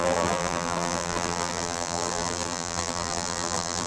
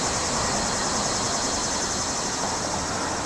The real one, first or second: second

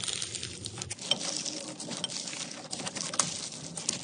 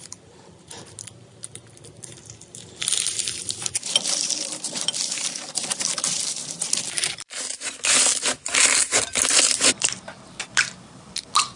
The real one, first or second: first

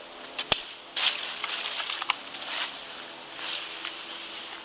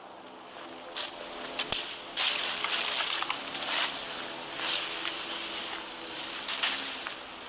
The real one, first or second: second